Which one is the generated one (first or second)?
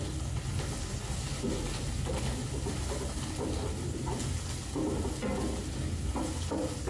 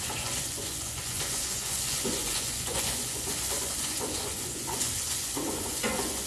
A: second